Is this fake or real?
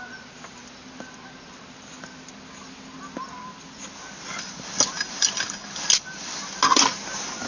real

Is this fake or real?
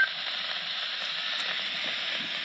real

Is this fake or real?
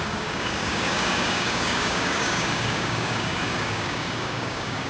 fake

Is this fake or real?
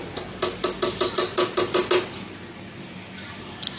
real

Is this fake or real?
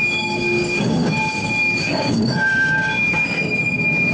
fake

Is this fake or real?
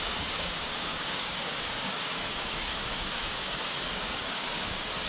fake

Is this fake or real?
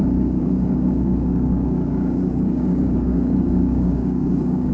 fake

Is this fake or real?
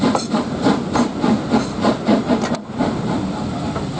real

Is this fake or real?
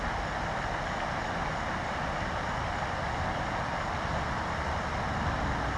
real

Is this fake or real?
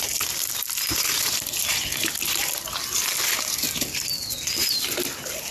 real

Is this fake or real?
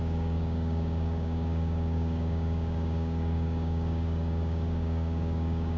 fake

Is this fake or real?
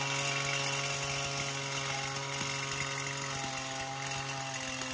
real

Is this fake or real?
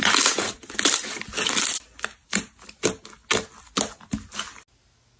real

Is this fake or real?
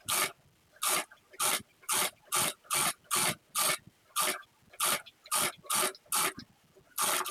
real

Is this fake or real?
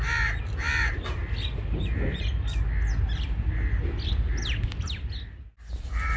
real